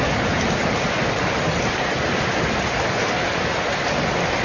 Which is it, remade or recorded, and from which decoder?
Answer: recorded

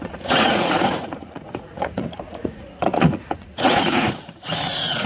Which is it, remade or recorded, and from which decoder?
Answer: remade, vocoder, Vocos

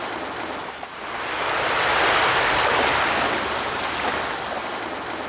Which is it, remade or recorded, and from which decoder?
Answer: recorded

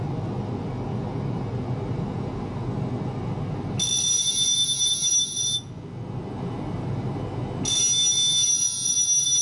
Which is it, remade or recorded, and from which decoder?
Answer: recorded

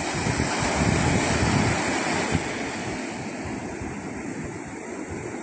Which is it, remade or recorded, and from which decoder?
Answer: recorded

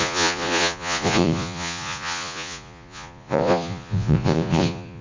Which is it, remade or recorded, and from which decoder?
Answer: remade, vocoder, Vocos